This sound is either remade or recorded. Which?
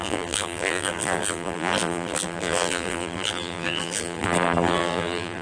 remade